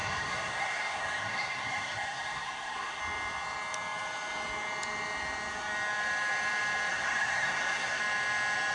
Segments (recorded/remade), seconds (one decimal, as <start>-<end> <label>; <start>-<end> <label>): 0.0-3.0 remade; 3.0-6.9 recorded; 6.9-8.0 remade; 8.0-8.7 recorded

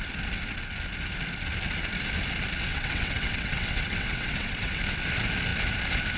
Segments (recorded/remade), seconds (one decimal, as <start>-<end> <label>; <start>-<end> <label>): 0.0-2.7 recorded; 2.7-4.8 remade; 4.8-6.2 recorded

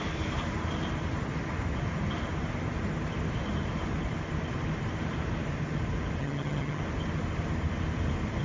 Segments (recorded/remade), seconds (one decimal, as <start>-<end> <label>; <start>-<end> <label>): 0.0-6.2 recorded; 6.2-6.8 remade; 6.8-8.4 recorded

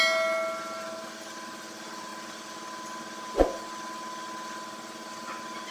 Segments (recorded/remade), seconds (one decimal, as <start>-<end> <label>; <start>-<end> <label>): 0.0-5.7 recorded

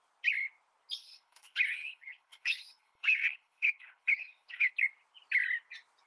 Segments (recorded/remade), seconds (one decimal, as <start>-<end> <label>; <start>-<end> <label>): 0.0-1.0 recorded; 1.0-4.7 remade; 4.7-6.1 recorded

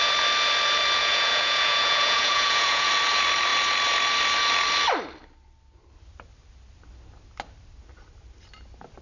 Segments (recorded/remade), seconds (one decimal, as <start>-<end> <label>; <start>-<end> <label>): 0.0-1.0 recorded; 1.0-2.9 remade; 2.9-9.0 recorded

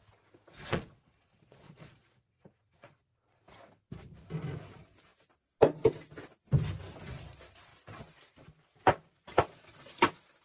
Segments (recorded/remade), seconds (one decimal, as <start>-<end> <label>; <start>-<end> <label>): 0.0-0.7 recorded; 0.7-3.4 remade; 3.4-10.4 recorded